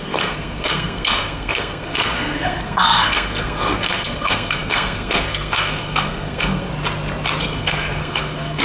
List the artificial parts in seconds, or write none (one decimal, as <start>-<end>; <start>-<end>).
0.0-6.7; 7.4-8.6